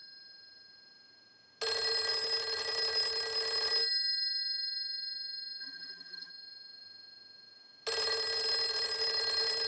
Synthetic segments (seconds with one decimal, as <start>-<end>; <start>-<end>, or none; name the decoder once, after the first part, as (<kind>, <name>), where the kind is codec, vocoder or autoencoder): 5.6-6.3 (vocoder, BigVGAN v2)